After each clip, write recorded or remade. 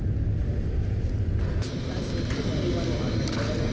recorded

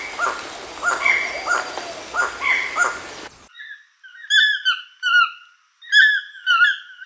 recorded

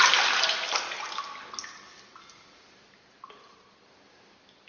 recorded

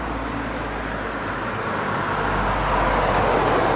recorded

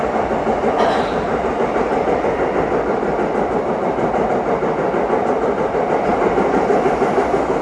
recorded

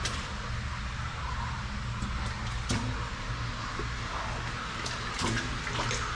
recorded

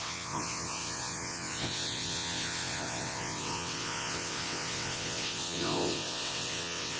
remade